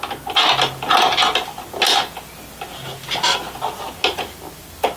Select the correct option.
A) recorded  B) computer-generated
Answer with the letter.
A